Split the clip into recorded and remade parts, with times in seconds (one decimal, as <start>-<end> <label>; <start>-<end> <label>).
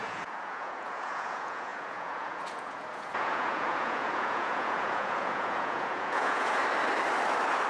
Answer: 0.0-6.6 remade; 6.6-7.7 recorded